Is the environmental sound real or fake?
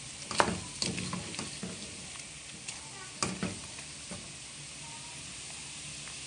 real